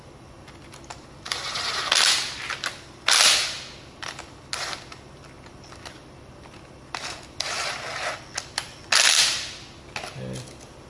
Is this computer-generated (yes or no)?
no